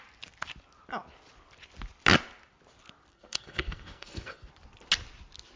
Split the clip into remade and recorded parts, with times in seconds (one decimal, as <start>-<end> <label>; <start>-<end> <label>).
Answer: 0.0-3.1 recorded; 3.1-4.5 remade; 4.5-5.6 recorded